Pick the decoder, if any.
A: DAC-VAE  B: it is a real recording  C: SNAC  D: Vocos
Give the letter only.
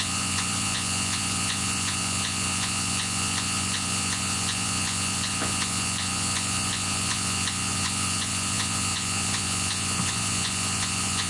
D